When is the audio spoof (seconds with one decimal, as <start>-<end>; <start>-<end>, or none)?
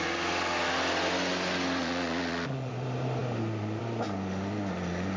1.8-2.7